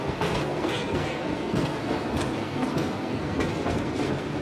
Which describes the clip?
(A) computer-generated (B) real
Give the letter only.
A